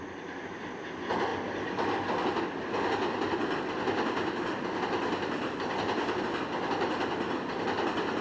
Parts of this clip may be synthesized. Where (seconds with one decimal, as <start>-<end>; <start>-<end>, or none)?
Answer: none